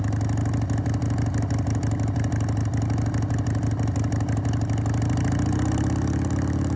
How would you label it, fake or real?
real